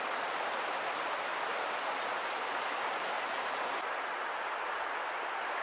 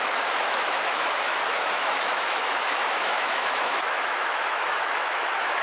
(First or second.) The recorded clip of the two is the first